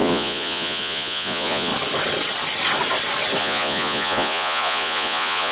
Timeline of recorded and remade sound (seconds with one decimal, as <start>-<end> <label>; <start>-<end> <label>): 0.0-1.7 remade; 1.7-3.4 recorded; 3.4-5.5 remade